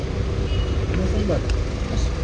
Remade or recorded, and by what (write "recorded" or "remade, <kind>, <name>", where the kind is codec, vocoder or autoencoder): recorded